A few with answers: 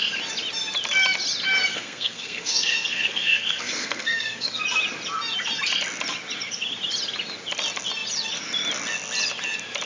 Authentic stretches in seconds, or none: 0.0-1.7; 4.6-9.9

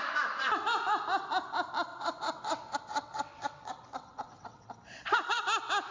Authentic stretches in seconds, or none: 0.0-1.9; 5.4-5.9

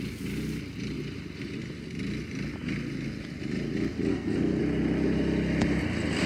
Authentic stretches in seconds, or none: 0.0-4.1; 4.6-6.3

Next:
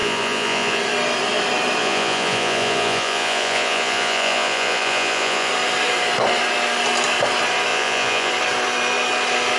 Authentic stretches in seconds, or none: 0.8-1.8; 5.5-7.7; 8.3-9.6

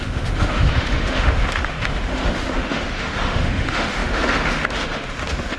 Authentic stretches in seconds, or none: none

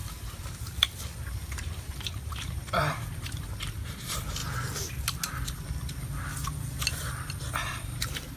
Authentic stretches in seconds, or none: 0.0-2.3; 4.4-7.7

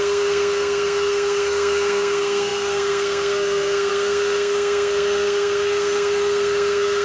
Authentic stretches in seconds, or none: none

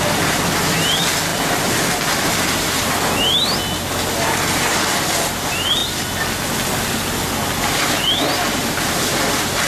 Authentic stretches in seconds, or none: 0.0-9.7